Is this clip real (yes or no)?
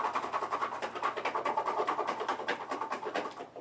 yes